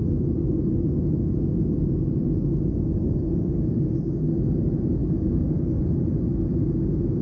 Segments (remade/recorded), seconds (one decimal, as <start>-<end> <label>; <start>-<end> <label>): 0.0-3.0 recorded; 3.0-3.8 remade; 3.8-5.0 recorded; 5.0-5.8 remade; 5.8-7.2 recorded